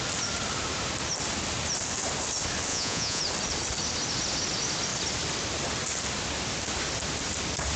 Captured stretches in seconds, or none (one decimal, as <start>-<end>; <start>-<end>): 0.0-2.7; 3.2-7.8